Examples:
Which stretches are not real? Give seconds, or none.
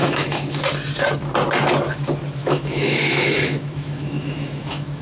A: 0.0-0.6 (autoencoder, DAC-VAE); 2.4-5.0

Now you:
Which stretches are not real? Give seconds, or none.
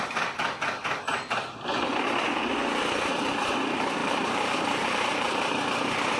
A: 4.0-5.6 (vocoder, BigVGAN v2)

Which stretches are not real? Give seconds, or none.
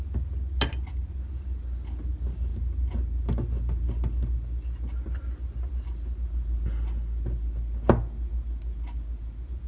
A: none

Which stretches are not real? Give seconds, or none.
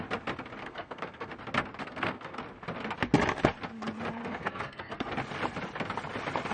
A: 0.6-1.3 (codec, SNAC); 1.8-2.4; 4.2-5.1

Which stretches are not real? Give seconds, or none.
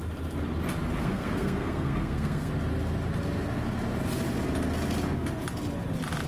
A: 1.0-2.5 (codec, SNAC)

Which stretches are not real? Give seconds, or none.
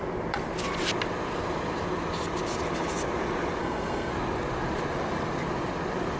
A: 3.6-4.1 (codec, SNAC)